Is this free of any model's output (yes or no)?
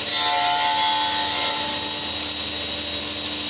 yes